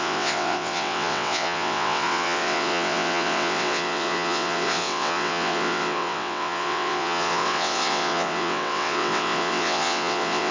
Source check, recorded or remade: remade